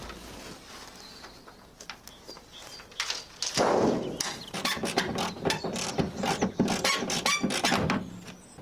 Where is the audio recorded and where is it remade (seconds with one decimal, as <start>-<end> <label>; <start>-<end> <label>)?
0.0-8.6 recorded